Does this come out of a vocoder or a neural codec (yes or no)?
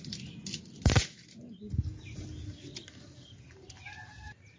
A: no